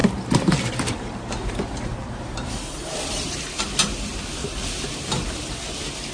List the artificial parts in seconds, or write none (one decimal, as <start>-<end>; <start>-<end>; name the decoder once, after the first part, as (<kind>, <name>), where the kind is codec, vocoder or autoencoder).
0.0-3.6 (vocoder, BigVGAN v2); 4.4-5.3